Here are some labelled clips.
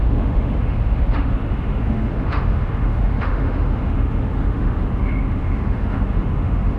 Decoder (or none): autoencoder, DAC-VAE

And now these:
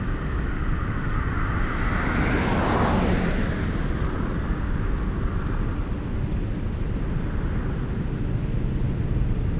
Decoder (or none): none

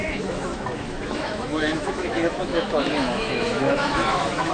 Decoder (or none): autoencoder, DAC-VAE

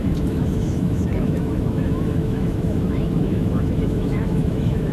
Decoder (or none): autoencoder, DAC-VAE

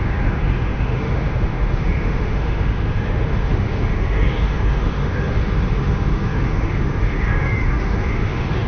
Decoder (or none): autoencoder, DAC-VAE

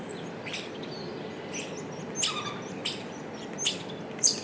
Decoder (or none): none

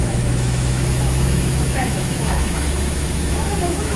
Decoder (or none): autoencoder, DAC-VAE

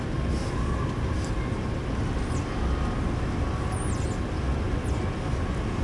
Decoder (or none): none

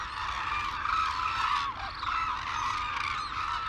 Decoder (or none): none